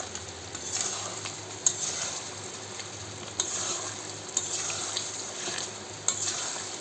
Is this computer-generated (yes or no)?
no